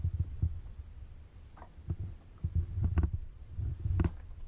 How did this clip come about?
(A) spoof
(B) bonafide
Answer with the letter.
B